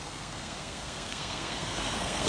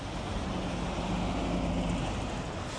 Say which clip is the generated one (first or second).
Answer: first